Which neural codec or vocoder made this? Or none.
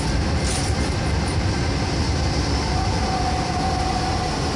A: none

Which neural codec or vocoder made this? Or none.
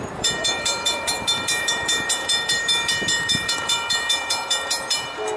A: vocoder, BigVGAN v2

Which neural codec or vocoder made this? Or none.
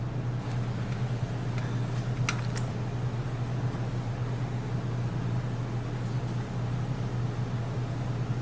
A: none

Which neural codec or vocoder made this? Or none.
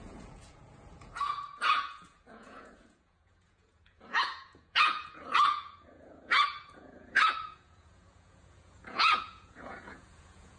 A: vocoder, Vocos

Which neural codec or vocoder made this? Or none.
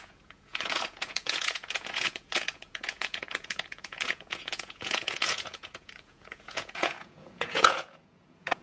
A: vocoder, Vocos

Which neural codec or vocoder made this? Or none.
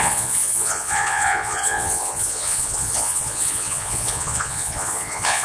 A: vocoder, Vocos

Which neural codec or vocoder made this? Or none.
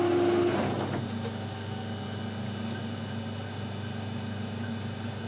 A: none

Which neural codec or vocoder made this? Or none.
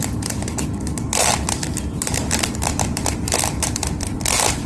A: vocoder, BigVGAN v2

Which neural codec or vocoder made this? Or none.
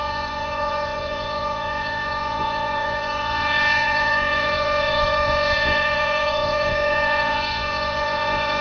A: vocoder, Vocos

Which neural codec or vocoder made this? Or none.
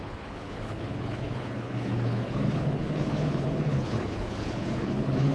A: codec, HILCodec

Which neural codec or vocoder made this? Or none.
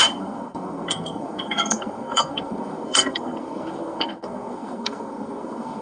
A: codec, SNAC